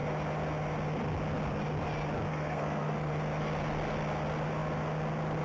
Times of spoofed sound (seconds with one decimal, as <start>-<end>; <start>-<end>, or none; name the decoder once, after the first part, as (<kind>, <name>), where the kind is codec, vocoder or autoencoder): 2.3-3.1 (codec, SNAC)

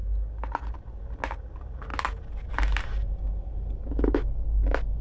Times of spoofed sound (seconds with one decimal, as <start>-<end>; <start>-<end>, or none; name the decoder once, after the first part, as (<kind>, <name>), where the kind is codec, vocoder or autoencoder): none

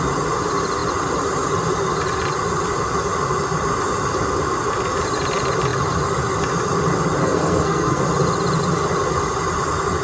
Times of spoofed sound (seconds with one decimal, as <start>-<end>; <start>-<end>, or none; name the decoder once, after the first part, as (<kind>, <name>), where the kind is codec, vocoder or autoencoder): 7.2-8.0 (codec, SNAC)

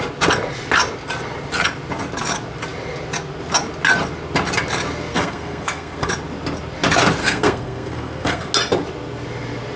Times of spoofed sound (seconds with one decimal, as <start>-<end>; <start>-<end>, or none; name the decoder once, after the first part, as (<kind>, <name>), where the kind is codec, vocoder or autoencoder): 5.1-6.1 (codec, SNAC); 7.2-8.5